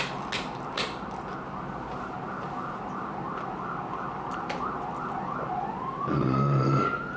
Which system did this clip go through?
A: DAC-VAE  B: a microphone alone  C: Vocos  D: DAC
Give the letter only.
B